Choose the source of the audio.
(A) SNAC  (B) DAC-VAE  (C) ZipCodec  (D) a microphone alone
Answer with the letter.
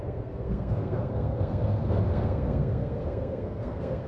A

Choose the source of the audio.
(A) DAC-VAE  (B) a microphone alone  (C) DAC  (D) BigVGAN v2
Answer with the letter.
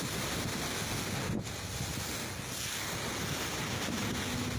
B